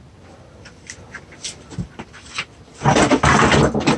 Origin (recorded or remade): remade